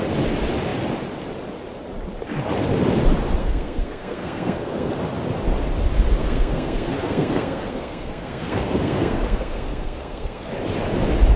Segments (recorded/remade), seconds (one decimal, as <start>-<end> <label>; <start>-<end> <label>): 0.0-3.4 recorded; 3.4-4.9 remade; 4.9-6.2 recorded; 6.2-10.5 remade; 10.5-11.4 recorded